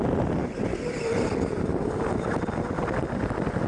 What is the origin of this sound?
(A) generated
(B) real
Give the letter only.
B